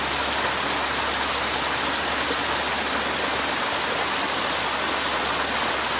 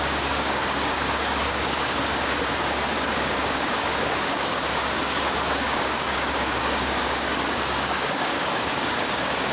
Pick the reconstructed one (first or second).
second